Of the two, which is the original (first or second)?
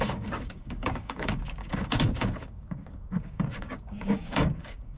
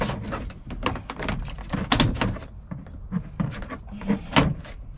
second